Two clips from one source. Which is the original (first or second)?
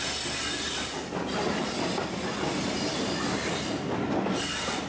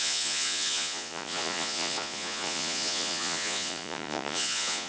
first